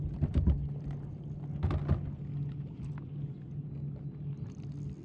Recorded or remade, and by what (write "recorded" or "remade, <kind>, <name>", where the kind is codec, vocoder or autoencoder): recorded